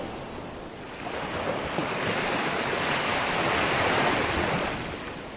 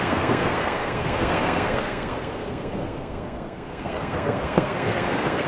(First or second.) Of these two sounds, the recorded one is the first